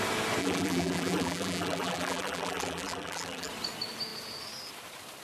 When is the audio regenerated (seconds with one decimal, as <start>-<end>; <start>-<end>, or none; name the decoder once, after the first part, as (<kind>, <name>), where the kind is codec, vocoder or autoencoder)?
0.4-3.5 (vocoder, BigVGAN v2)